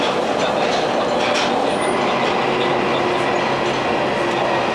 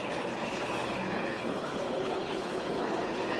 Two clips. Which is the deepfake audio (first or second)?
second